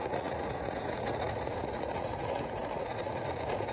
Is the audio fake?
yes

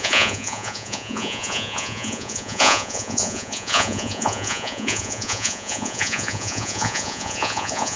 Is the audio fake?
yes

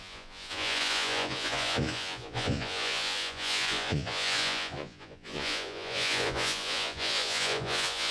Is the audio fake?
yes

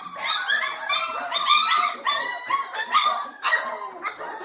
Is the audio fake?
no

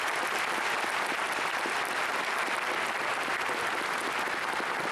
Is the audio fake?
no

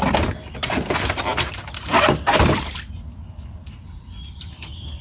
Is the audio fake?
no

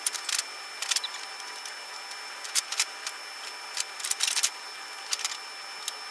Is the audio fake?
no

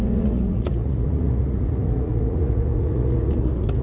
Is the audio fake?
yes